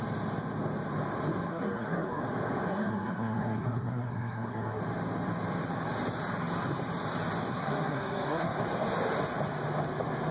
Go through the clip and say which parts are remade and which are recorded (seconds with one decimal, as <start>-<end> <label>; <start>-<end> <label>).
0.0-1.5 recorded; 1.5-2.2 remade; 2.2-2.7 recorded; 2.7-4.8 remade; 4.8-7.5 recorded; 7.5-8.6 remade; 8.6-10.3 recorded